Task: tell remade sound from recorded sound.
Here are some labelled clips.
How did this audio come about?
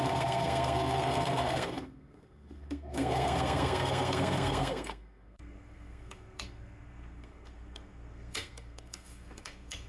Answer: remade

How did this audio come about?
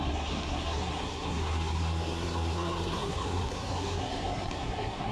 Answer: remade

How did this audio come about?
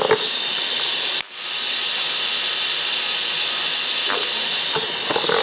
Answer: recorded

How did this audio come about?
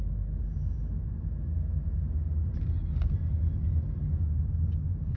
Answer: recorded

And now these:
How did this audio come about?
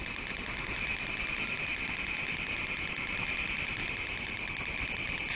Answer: recorded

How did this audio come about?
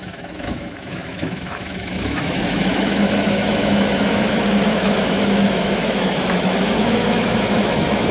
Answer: remade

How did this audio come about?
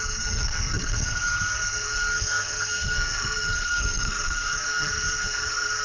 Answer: remade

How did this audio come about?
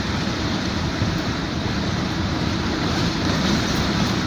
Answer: remade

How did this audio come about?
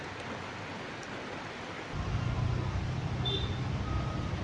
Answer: recorded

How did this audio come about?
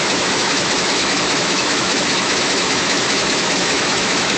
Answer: remade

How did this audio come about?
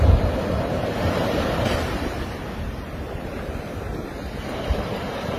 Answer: remade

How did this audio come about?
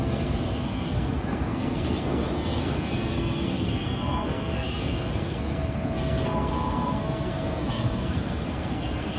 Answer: remade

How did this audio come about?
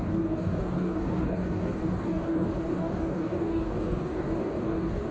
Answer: remade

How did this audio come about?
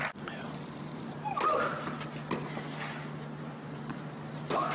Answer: recorded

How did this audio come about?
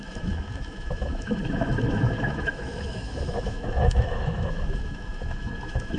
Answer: remade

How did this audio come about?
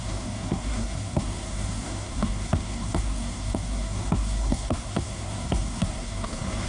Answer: remade